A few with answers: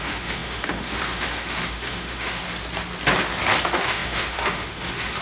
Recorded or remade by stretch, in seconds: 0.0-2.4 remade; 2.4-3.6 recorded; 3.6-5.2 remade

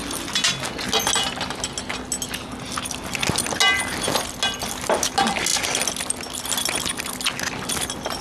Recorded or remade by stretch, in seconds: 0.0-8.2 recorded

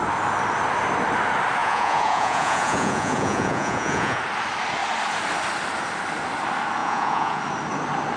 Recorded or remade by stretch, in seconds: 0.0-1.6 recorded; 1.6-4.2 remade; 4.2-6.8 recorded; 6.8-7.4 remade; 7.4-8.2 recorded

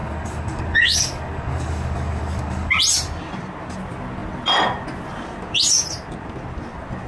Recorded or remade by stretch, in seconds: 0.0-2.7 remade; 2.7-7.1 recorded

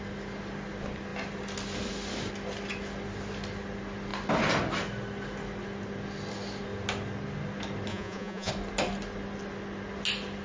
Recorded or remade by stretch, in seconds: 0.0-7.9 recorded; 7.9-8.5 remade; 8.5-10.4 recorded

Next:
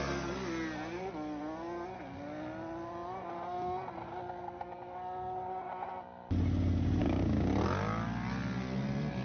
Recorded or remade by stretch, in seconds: 0.0-7.0 recorded; 7.0-7.5 remade; 7.5-9.2 recorded